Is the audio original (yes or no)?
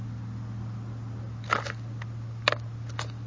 yes